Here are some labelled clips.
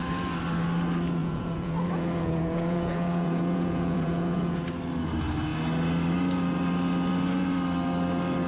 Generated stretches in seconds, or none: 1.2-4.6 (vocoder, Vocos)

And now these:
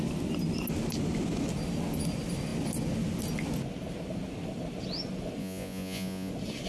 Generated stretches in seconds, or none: 5.4-6.3 (vocoder, Vocos)